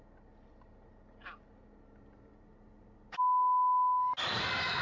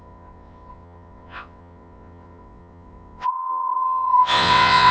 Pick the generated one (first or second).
second